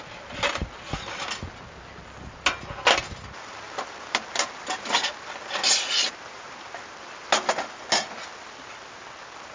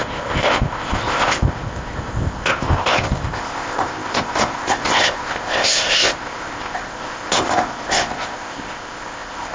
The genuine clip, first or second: first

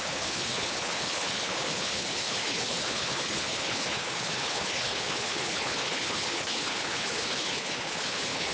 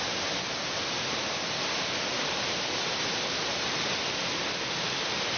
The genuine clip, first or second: second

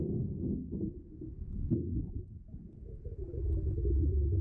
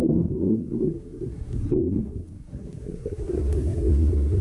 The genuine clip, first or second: first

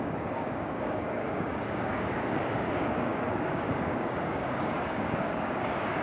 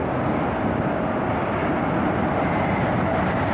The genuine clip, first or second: second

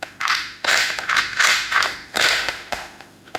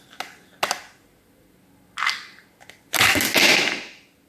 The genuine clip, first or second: second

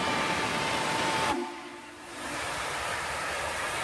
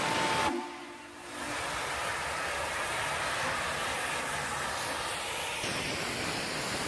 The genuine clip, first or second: second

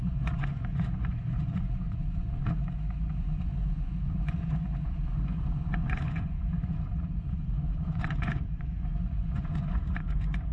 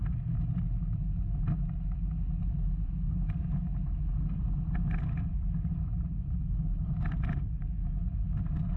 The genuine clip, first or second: second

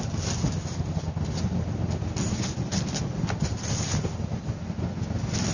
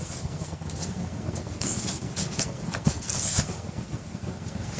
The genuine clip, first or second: first